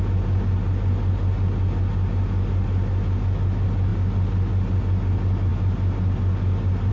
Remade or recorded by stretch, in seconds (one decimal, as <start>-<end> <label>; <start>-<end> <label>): 0.0-6.9 recorded